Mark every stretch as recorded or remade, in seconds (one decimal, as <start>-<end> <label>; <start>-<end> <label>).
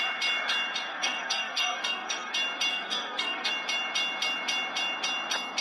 0.0-0.9 recorded; 0.9-2.3 remade; 2.3-2.7 recorded; 2.7-3.5 remade; 3.5-5.6 recorded